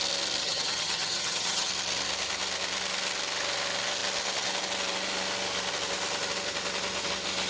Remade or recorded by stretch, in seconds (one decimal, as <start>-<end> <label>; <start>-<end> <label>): 0.0-0.4 recorded; 0.4-1.7 remade; 1.7-7.5 recorded